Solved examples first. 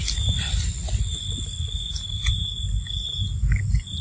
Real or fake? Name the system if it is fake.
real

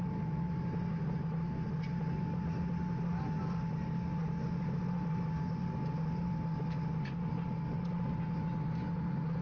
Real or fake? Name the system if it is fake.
real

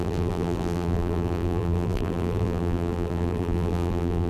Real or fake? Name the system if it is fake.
fake, vocoder, BigVGAN v2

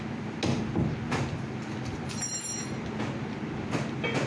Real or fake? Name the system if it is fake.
real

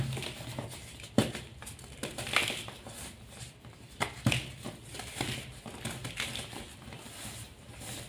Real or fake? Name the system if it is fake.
real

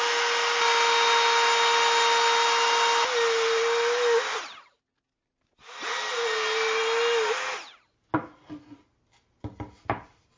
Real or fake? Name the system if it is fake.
real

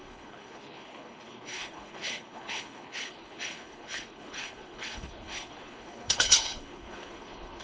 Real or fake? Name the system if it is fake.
fake, codec, HILCodec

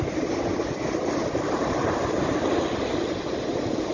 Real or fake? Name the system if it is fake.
real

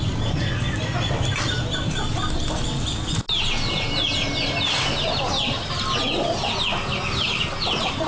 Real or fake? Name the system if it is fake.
real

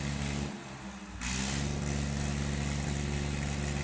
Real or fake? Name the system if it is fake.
real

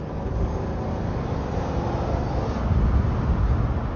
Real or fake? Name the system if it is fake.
real